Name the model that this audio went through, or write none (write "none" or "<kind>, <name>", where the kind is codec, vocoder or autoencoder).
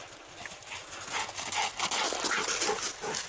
none